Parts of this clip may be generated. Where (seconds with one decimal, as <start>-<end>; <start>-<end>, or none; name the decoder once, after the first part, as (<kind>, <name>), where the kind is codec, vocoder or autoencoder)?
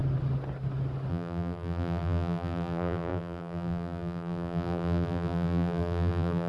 1.1-6.5 (vocoder, BigVGAN v2)